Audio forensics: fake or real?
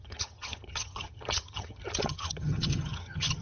fake